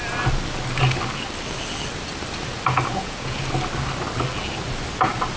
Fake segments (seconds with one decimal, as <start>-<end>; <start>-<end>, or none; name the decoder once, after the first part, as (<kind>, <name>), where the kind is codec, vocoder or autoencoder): 2.9-3.4 (vocoder, Vocos)